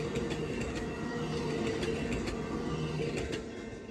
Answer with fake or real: real